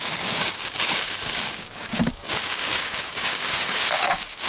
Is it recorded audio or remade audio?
remade